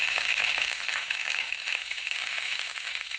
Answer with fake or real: fake